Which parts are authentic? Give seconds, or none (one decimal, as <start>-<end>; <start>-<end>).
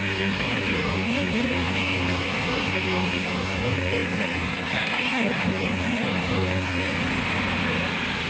6.9-8.3